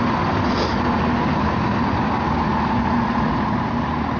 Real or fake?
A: real